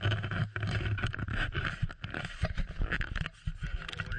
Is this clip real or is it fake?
real